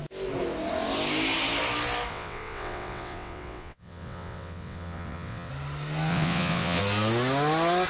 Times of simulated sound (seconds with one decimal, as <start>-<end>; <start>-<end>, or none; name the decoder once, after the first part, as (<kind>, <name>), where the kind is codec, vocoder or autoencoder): 2.1-5.5 (vocoder, WaveNeXt); 6.1-6.8